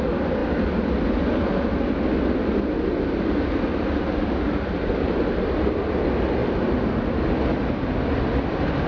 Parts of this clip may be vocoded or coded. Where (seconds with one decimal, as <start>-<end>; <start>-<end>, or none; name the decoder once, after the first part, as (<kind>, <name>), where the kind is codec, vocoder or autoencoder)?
none